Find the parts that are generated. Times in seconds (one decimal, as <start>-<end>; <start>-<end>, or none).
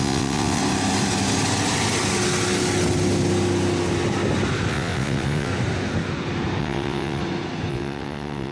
0.0-0.6; 4.7-5.5; 6.6-7.2; 7.7-8.5